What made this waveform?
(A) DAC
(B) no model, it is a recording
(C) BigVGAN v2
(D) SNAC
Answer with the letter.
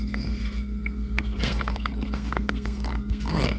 D